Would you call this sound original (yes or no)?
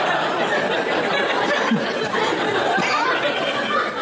yes